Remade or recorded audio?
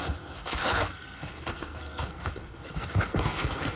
remade